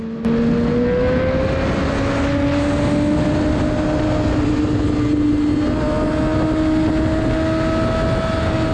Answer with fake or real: real